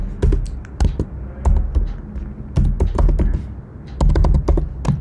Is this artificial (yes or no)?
no